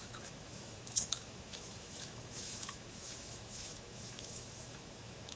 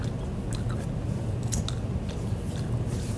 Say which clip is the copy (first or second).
first